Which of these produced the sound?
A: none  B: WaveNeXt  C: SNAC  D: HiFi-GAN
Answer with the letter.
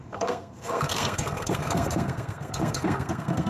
C